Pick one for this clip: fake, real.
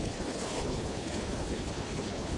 fake